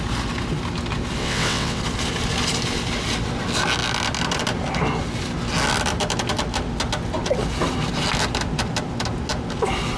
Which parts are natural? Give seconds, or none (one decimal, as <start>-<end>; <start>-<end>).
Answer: 0.0-1.2; 1.8-10.0